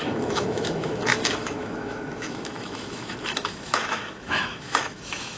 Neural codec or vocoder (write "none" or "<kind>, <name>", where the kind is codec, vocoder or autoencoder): autoencoder, DAC-VAE